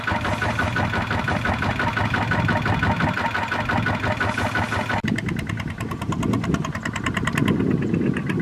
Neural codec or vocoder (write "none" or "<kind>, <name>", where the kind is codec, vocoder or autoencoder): none